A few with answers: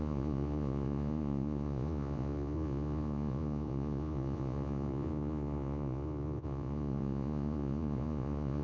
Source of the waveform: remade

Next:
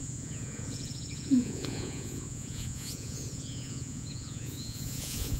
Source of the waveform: remade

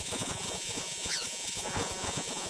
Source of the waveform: remade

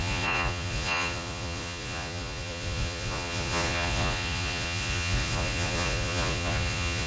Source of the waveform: remade